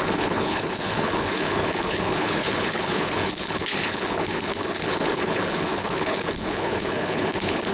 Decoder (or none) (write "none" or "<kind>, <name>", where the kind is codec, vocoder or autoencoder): codec, HILCodec